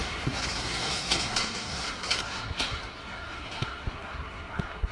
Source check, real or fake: fake